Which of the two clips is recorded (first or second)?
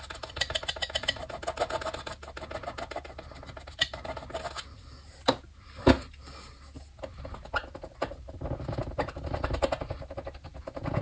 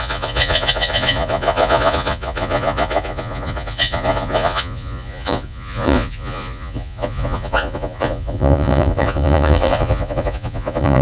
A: first